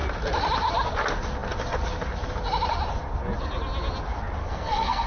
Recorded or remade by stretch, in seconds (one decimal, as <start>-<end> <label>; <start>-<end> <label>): 0.0-4.4 recorded; 4.4-5.1 remade